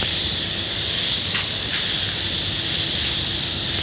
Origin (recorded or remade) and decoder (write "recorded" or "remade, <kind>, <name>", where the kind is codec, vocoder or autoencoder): recorded